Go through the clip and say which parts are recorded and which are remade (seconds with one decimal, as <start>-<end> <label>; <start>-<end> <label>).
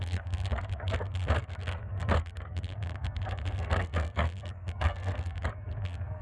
0.0-6.2 remade